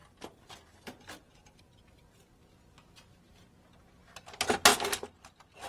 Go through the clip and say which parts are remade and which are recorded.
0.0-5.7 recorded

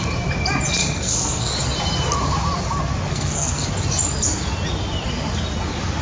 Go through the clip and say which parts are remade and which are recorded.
0.0-0.8 recorded; 0.8-1.5 remade; 1.5-3.1 recorded; 3.1-3.7 remade; 3.7-6.0 recorded